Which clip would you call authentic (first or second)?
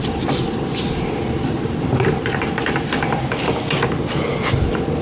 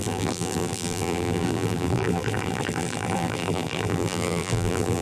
first